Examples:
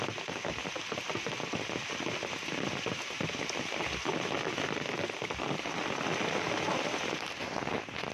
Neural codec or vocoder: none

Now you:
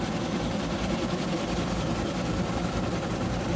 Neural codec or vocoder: vocoder, BigVGAN v2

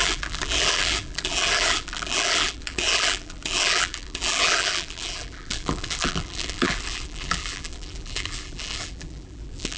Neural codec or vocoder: vocoder, BigVGAN v2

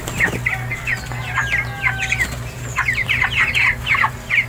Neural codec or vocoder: none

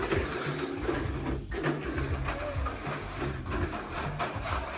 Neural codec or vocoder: none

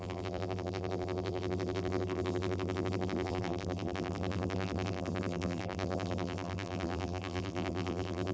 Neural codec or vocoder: vocoder, BigVGAN v2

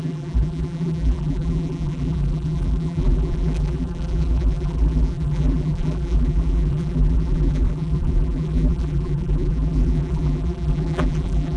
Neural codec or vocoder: vocoder, BigVGAN v2